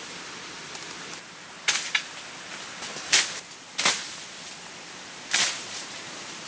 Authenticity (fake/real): real